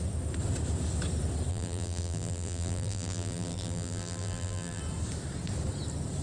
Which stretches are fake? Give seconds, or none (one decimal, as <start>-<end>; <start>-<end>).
1.5-4.8